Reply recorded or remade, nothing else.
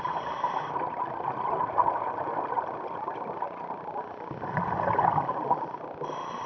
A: recorded